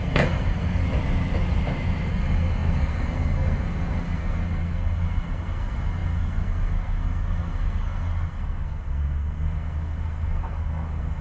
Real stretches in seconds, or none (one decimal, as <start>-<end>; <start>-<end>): 0.8-2.1